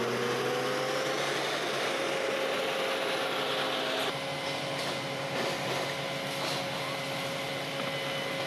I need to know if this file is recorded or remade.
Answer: recorded